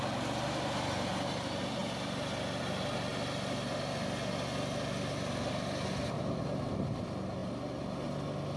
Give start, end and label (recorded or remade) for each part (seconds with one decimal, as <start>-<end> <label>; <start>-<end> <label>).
0.0-8.6 recorded